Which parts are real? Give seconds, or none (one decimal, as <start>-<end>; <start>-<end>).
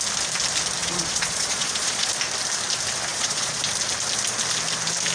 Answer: 0.0-0.8; 2.1-3.1; 3.6-5.1